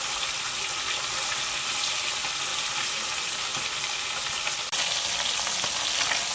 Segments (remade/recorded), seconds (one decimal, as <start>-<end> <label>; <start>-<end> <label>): 0.0-2.5 recorded; 2.5-3.1 remade; 3.1-6.3 recorded